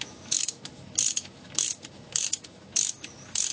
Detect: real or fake fake